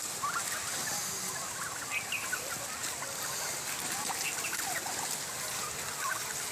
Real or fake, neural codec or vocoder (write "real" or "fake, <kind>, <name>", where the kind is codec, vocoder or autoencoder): real